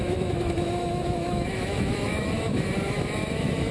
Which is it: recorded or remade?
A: remade